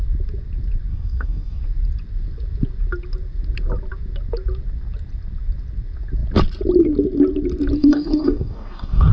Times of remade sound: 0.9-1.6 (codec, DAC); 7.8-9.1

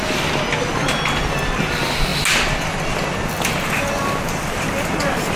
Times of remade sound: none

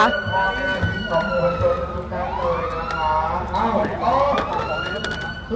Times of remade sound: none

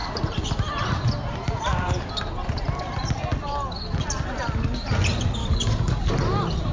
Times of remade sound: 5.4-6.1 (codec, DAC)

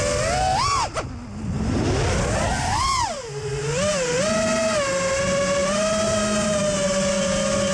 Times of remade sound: none